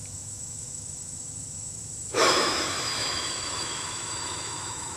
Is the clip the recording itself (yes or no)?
no